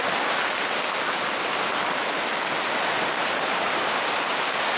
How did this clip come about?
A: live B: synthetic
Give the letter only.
A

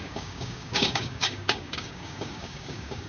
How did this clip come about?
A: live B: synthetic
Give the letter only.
B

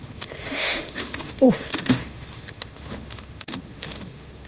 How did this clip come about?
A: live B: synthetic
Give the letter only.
B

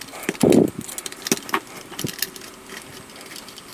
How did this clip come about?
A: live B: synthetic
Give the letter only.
A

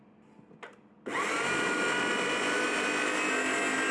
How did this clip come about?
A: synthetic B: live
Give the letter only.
B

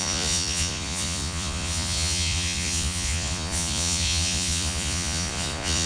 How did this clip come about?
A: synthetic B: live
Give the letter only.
A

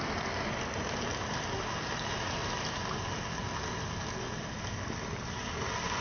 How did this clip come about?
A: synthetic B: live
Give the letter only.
B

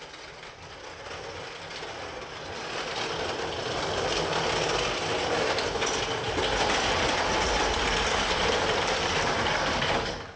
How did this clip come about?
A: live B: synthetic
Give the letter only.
A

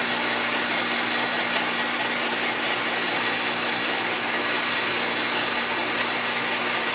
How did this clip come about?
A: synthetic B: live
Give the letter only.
B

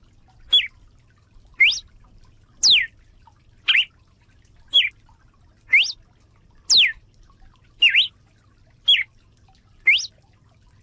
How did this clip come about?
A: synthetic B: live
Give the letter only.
B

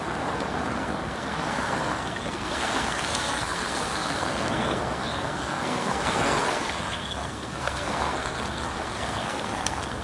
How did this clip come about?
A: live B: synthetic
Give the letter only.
B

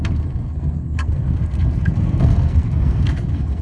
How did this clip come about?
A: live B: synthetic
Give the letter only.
B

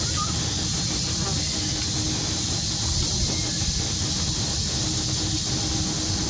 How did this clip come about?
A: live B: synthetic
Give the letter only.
A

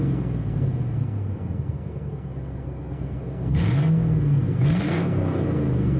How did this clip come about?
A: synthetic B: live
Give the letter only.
A